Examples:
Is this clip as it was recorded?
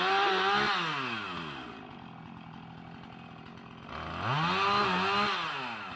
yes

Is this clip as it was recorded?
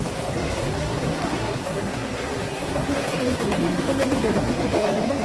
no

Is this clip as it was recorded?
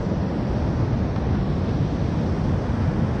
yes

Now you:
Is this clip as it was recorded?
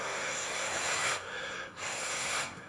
no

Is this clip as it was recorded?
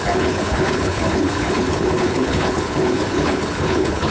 no